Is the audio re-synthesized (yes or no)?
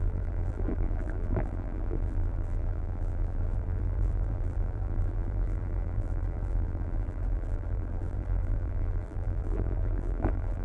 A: yes